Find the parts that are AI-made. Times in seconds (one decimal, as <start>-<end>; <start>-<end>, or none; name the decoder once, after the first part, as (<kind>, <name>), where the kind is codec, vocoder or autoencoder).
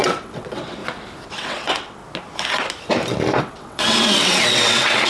0.0-0.8 (vocoder, WaveNeXt); 1.3-2.0; 3.4-5.1